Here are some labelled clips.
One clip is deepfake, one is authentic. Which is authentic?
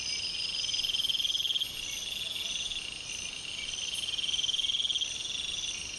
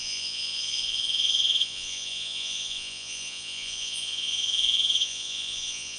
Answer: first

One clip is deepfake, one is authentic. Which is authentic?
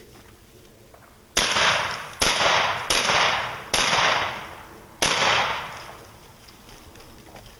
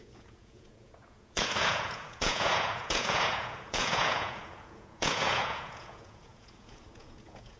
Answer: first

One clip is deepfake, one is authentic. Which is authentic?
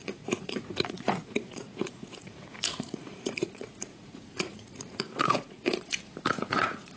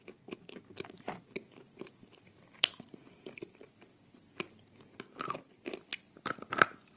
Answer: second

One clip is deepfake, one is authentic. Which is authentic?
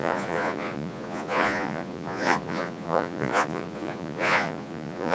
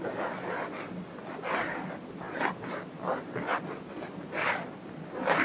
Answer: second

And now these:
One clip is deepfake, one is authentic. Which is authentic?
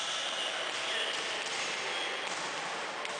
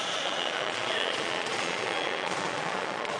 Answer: first